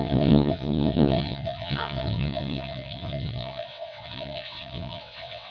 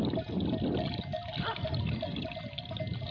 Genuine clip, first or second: second